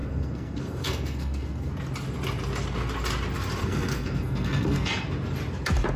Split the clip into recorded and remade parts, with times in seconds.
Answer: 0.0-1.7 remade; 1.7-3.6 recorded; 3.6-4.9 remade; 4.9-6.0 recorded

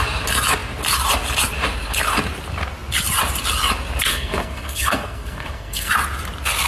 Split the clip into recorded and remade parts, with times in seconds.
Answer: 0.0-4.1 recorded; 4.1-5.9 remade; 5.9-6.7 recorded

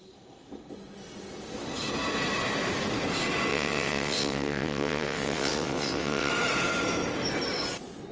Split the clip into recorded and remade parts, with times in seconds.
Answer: 0.0-3.5 recorded; 3.5-6.3 remade; 6.3-8.1 recorded

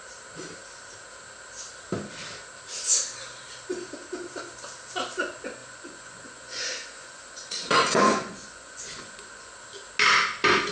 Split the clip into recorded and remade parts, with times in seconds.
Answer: 0.0-5.6 recorded; 5.6-9.5 remade; 9.5-10.7 recorded

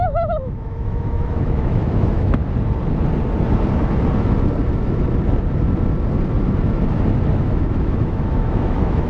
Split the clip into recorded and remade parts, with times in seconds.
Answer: 0.0-2.4 remade; 2.4-7.3 recorded; 7.3-9.1 remade